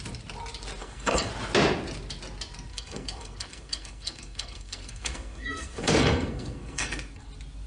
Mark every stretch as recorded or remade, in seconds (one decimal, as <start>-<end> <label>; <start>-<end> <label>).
0.0-0.8 recorded; 0.8-1.3 remade; 1.3-2.7 recorded; 2.7-7.3 remade; 7.3-7.7 recorded